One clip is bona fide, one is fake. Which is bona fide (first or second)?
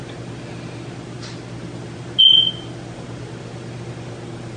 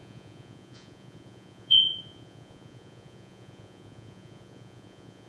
first